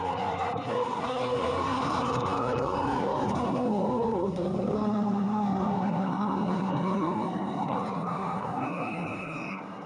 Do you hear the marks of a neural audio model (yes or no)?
yes